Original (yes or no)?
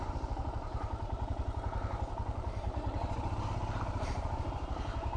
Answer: no